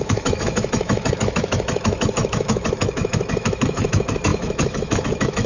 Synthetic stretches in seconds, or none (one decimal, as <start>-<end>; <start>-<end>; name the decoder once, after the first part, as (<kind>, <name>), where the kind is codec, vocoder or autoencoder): 0.0-5.5 (autoencoder, DAC-VAE)

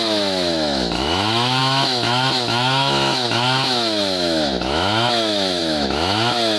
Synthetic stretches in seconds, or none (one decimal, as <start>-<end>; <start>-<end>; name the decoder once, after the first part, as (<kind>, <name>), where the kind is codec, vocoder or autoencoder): 0.0-6.6 (autoencoder, DAC-VAE)

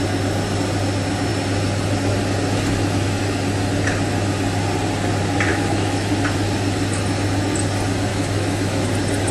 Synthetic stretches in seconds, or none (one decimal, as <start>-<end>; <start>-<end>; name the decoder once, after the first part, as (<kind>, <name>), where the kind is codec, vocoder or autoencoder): 5.5-6.1 (autoencoder, DAC-VAE); 8.1-8.9

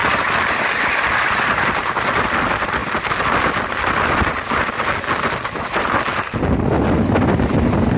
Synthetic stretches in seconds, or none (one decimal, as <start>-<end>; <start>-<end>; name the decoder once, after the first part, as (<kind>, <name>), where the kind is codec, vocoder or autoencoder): none

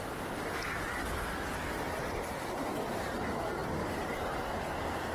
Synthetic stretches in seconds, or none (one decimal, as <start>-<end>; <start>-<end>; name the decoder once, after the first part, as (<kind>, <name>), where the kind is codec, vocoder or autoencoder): none

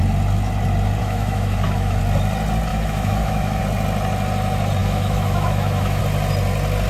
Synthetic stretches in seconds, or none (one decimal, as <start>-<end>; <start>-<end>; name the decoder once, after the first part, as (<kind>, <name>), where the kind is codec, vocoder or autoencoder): 1.0-2.0 (autoencoder, DAC-VAE); 2.7-3.6; 4.8-6.0

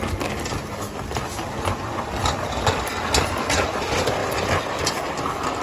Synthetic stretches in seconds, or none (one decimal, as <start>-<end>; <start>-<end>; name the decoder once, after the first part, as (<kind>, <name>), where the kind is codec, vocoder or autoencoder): none